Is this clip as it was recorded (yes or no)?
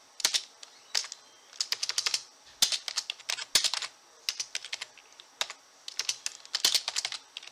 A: yes